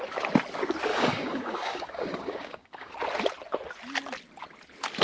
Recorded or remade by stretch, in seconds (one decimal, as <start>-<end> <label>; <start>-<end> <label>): 0.0-0.9 recorded; 0.9-2.9 remade; 2.9-5.0 recorded